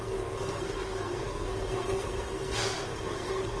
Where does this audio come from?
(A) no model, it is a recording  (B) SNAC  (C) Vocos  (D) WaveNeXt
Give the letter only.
B